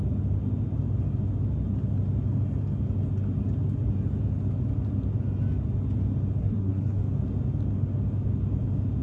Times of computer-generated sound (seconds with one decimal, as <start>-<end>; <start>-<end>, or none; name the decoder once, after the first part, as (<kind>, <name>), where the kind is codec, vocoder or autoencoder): 6.4-7.0 (codec, SNAC)